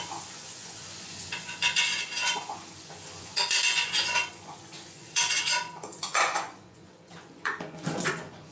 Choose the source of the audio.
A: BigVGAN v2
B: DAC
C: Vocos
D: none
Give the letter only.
C